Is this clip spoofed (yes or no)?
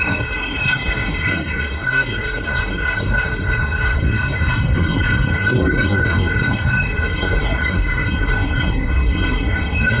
yes